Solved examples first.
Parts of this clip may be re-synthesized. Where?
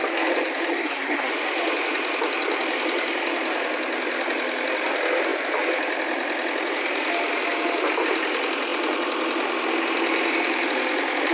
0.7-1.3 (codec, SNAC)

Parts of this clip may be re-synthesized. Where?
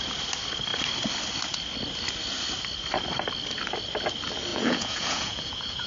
4.5-5.9 (vocoder, Vocos)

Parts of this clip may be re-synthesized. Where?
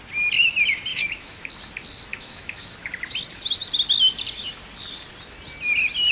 0.9-1.5 (autoencoder, DAC-VAE); 2.1-2.9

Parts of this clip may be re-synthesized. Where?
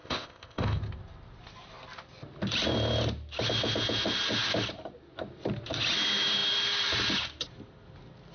0.0-0.8 (codec, ZipCodec)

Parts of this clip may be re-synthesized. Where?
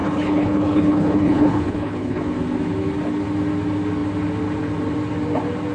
0.0-2.2 (codec, HILCodec)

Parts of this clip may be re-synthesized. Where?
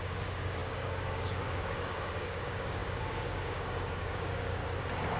0.0-4.6 (codec, DAC)